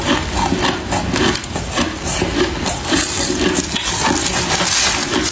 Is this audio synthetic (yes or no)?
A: no